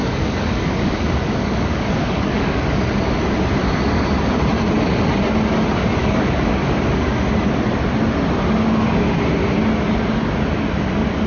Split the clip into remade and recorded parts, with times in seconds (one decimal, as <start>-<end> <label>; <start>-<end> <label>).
0.0-2.8 remade; 2.8-6.0 recorded; 6.0-6.7 remade; 6.7-11.3 recorded